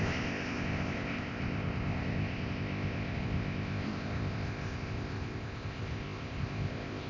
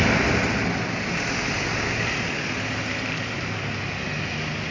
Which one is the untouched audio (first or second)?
second